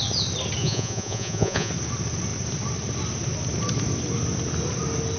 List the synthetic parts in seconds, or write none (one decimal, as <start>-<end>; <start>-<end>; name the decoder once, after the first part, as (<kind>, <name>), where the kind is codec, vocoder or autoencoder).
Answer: 0.6-1.7 (vocoder, Vocos)